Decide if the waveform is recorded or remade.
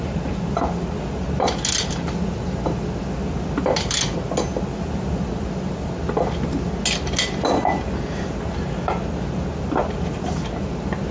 recorded